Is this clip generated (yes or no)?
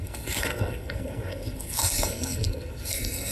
yes